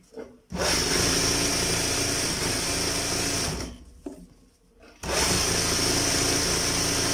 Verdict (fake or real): real